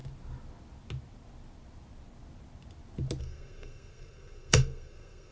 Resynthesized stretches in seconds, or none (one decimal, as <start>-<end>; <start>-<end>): 3.2-5.3